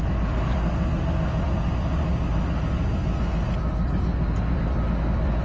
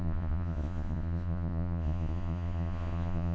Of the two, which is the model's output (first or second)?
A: second